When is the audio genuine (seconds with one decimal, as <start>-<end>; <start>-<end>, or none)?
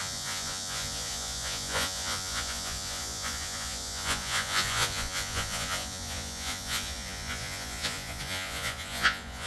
none